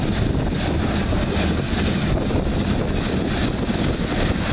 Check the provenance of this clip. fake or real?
real